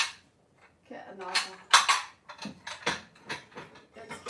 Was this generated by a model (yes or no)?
no